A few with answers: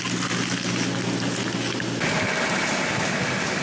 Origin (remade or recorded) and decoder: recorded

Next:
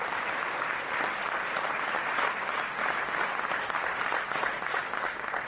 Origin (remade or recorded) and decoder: recorded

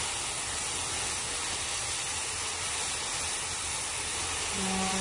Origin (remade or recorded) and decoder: recorded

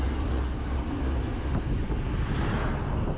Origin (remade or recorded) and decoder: recorded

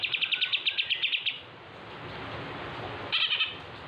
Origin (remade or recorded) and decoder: recorded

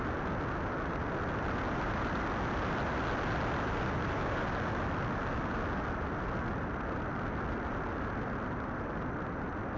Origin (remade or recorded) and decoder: recorded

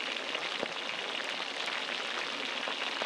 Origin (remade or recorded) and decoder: recorded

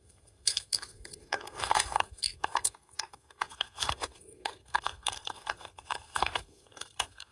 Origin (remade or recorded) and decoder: remade, codec, SNAC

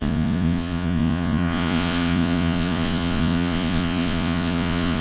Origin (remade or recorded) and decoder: remade, vocoder, Vocos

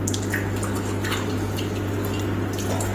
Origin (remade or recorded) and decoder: recorded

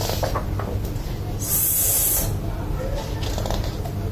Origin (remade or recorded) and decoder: recorded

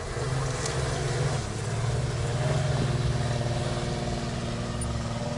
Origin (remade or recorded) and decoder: recorded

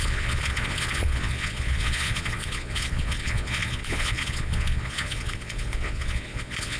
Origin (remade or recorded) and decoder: remade, vocoder, Vocos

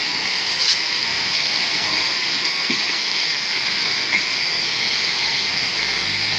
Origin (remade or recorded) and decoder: remade, codec, SNAC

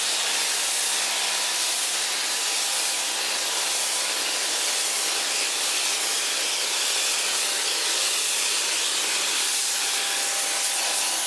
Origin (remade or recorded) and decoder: recorded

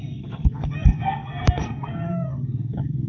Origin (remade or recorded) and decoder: remade, codec, SNAC